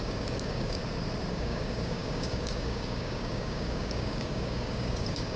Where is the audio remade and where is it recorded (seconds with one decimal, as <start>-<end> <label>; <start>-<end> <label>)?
0.0-0.8 remade; 0.8-1.3 recorded; 1.3-5.4 remade